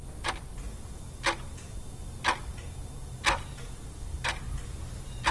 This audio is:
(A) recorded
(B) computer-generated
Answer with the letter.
A